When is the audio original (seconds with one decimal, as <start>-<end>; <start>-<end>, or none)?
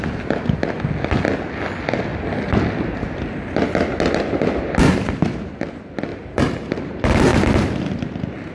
0.0-6.1; 6.7-8.5